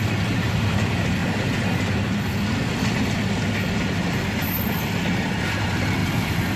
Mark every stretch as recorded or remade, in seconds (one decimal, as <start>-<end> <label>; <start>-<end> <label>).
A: 0.0-6.6 recorded

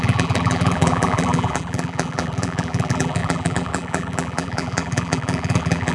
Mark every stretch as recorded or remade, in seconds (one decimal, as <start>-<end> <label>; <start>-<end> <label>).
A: 0.0-5.9 remade

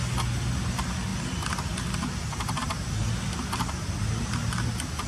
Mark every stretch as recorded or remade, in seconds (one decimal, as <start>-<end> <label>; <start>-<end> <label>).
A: 0.0-5.1 recorded

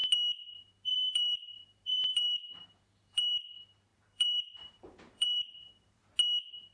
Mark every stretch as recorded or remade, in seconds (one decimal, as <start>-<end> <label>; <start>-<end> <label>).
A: 0.0-0.4 recorded; 0.4-3.5 remade; 3.5-3.9 recorded; 3.9-6.0 remade; 6.0-6.7 recorded